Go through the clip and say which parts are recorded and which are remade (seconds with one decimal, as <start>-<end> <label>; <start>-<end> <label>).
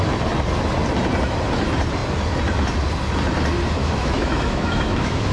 0.0-3.8 recorded; 3.8-5.3 remade